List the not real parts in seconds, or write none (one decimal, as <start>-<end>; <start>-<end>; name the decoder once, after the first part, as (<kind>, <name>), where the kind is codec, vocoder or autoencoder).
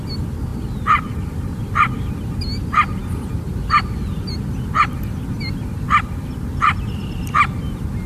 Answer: 0.5-1.6 (vocoder, BigVGAN v2)